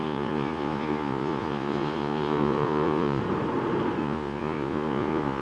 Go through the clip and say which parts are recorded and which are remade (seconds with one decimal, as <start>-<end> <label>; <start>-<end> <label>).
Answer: 0.0-3.2 remade; 3.2-4.0 recorded; 4.0-5.4 remade